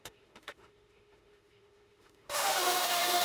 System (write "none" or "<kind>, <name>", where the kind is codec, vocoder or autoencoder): autoencoder, DAC-VAE